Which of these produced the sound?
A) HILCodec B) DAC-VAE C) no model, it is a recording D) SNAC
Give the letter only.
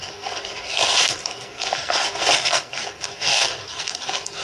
D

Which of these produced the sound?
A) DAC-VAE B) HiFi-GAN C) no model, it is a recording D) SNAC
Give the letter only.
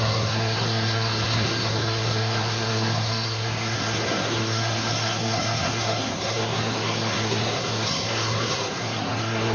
D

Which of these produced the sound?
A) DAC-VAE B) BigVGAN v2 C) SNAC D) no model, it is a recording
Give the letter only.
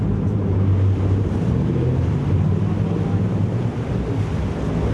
D